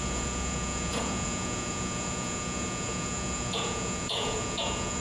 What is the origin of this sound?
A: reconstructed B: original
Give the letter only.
A